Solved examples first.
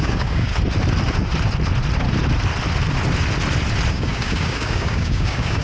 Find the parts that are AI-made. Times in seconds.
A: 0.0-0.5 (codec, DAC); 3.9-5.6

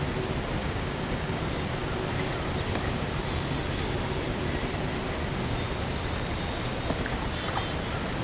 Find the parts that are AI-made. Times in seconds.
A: 0.6-1.4 (codec, DAC)

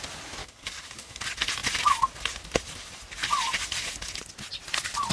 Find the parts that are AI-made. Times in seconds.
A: 0.4-1.2 (codec, DAC)

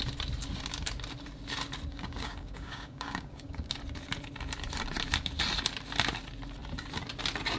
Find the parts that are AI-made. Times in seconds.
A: 1.9-3.8 (codec, DAC)

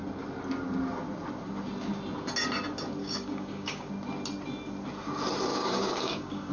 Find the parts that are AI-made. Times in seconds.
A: 3.0-3.9 (codec, DAC); 5.5-6.5